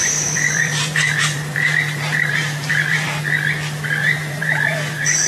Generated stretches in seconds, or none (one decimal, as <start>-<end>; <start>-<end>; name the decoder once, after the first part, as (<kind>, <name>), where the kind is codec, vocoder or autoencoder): 0.0-3.2 (vocoder, BigVGAN v2); 4.0-5.3